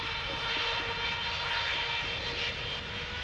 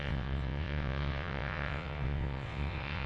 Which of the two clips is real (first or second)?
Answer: first